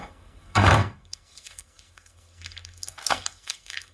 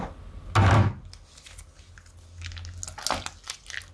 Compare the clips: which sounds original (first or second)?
second